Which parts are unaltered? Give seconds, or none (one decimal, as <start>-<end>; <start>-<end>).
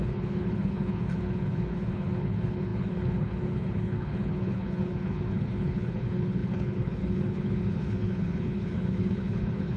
none